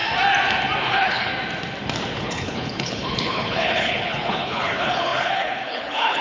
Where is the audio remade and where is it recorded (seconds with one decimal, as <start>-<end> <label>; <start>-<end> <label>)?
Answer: 0.0-0.8 recorded; 0.8-1.3 remade; 1.3-2.2 recorded; 2.2-6.2 remade